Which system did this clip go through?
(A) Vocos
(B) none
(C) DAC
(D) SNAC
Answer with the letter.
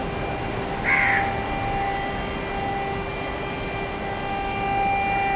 B